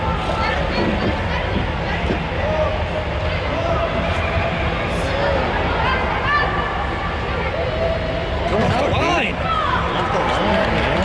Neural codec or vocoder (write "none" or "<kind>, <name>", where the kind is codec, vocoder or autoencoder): none